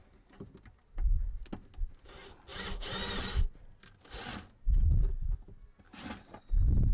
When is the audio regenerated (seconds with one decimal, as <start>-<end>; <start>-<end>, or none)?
none